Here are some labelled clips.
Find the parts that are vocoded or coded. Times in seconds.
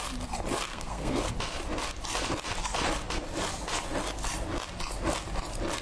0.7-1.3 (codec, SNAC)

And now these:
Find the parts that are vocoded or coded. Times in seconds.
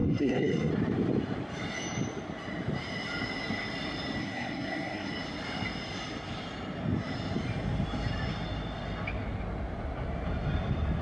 0.0-0.7 (codec, SNAC); 4.2-5.1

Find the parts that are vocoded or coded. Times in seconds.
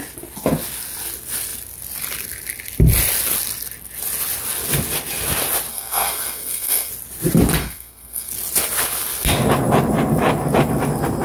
5.7-6.9 (codec, SNAC); 7.6-8.3